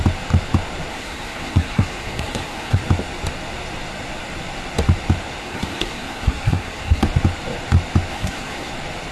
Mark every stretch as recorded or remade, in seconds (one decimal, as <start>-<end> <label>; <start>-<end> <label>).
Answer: 0.0-0.9 recorded; 0.9-2.8 remade; 2.8-5.4 recorded; 5.4-7.0 remade; 7.0-8.1 recorded; 8.1-8.7 remade; 8.7-9.1 recorded